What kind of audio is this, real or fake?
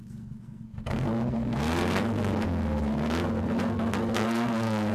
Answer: fake